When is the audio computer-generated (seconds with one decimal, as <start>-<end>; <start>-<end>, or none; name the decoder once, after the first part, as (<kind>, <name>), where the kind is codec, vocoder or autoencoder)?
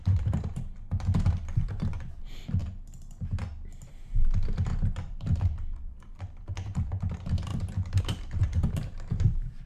0.0-2.6 (vocoder, BigVGAN v2); 3.9-7.5; 8.0-9.7